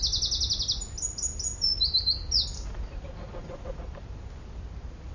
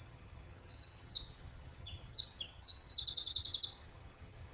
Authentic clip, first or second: first